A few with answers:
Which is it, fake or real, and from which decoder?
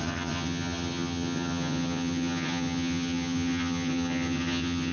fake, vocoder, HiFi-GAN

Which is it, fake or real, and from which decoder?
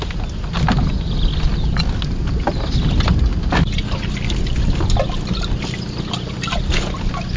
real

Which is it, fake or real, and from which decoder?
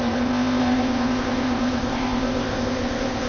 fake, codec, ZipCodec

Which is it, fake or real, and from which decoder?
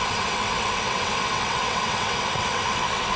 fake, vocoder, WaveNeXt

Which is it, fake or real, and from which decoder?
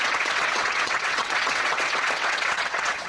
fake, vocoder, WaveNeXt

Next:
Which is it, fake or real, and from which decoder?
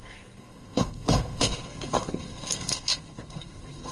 fake, codec, SNAC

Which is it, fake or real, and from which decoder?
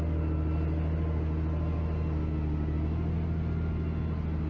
real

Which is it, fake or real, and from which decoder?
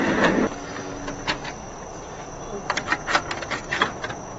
real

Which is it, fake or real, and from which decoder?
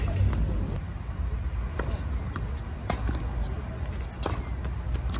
real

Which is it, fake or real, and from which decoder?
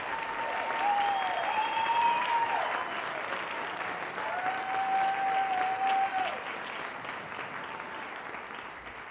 real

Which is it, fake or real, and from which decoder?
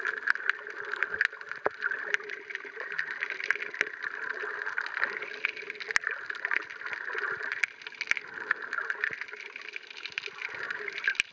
real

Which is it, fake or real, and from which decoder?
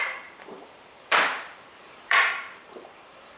fake, vocoder, BigVGAN v2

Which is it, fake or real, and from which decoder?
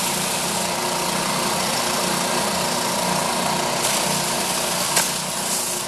real